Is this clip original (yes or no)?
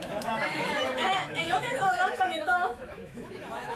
no